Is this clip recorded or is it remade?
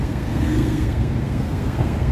remade